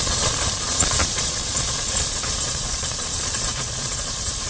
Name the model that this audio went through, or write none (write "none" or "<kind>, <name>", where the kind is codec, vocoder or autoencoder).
vocoder, Vocos